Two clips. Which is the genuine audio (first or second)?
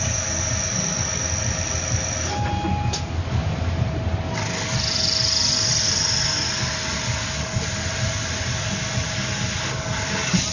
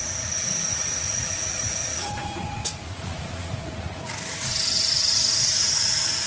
first